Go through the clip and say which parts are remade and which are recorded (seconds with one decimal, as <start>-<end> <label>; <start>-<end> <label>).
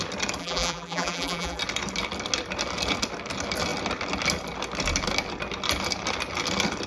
0.0-0.4 recorded; 0.4-1.6 remade; 1.6-6.9 recorded